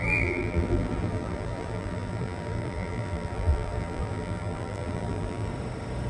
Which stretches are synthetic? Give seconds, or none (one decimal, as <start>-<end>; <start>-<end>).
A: 0.0-5.5